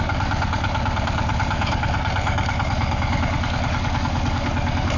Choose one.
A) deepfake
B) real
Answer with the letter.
A